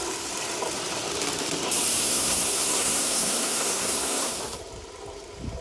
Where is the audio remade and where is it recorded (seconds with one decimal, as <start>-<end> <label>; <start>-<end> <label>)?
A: 0.0-2.0 recorded; 2.0-4.4 remade; 4.4-5.6 recorded